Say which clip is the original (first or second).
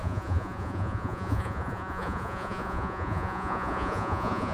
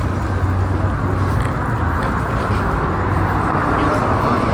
second